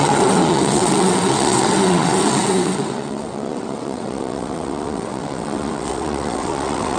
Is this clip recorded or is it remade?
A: remade